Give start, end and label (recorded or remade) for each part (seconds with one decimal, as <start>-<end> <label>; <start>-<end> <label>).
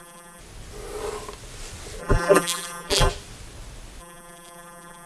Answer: 0.0-0.4 remade; 0.4-2.0 recorded; 2.0-3.1 remade; 3.1-4.0 recorded; 4.0-5.1 remade